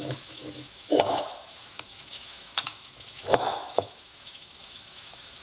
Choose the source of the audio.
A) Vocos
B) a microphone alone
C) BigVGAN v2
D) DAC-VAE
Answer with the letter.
D